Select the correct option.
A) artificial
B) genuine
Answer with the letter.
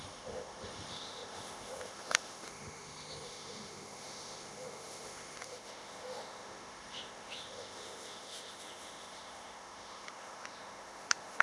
A